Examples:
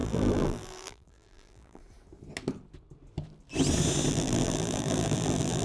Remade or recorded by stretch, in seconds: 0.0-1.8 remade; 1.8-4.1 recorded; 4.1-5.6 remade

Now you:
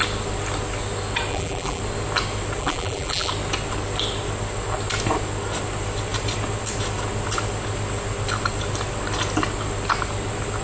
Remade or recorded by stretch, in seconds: 0.0-1.3 recorded; 1.3-1.8 remade; 1.8-2.6 recorded; 2.6-3.3 remade; 3.3-10.6 recorded

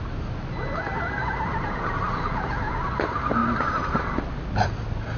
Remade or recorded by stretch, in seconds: 0.0-5.2 recorded

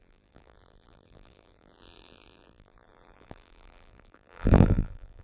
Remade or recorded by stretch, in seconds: 0.0-5.2 remade

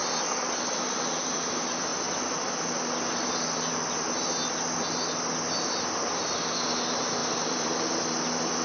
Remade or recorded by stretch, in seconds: 0.0-7.2 recorded; 7.2-8.2 remade; 8.2-8.6 recorded